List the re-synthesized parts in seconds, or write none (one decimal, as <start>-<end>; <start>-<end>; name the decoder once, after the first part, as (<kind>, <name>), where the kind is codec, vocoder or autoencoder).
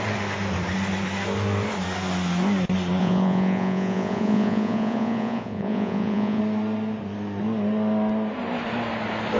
3.0-6.4 (vocoder, Vocos)